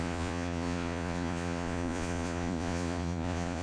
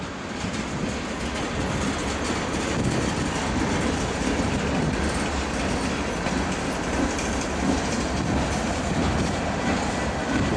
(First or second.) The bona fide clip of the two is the second